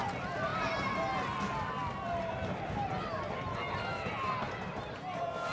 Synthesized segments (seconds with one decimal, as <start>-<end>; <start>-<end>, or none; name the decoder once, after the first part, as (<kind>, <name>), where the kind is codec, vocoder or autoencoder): none